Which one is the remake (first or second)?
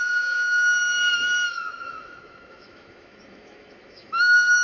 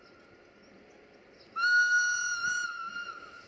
first